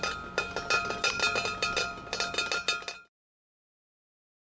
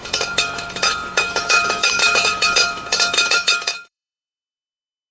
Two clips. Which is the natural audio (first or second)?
first